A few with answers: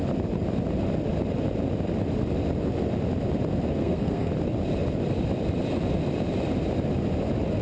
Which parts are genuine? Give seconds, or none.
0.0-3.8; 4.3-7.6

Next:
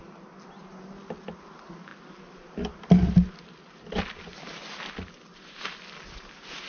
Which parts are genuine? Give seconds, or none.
0.0-6.7